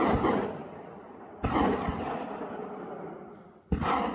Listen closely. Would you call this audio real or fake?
real